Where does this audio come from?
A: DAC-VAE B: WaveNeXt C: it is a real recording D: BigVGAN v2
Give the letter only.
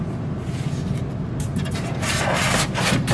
C